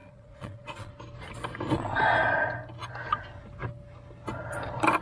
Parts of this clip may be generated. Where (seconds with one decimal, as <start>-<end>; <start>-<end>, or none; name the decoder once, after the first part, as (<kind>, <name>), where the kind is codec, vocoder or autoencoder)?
0.0-0.9 (vocoder, Vocos)